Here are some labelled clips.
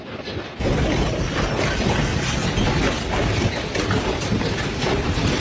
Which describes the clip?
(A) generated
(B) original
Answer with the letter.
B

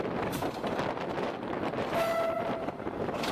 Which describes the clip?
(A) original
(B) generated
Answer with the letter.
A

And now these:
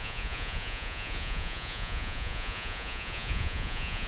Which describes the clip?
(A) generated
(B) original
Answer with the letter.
A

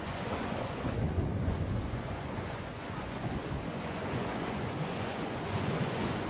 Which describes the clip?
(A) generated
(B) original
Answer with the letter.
A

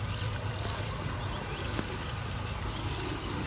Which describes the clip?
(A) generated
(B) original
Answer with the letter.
B